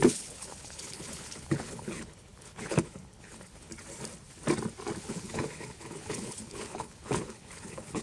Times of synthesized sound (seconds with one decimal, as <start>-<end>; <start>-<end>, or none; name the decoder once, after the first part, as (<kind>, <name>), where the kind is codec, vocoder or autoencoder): 0.0-3.7 (codec, HILCodec); 5.0-8.0